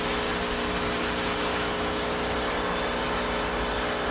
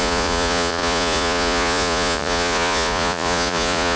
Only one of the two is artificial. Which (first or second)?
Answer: second